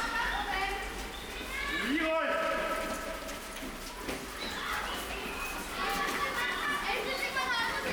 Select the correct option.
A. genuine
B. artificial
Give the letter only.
A